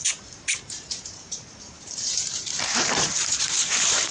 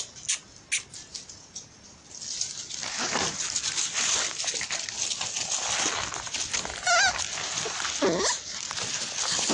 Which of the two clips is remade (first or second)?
first